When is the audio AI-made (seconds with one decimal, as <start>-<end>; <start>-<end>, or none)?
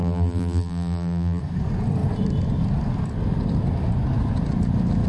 0.0-1.4